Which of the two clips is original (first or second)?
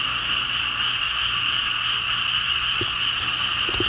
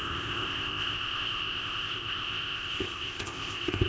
first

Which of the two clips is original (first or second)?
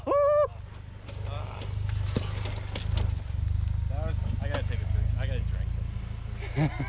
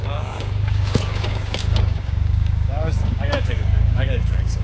first